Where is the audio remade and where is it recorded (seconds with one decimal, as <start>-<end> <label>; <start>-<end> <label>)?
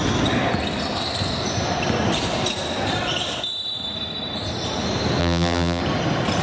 0.0-5.2 recorded; 5.2-5.8 remade; 5.8-6.4 recorded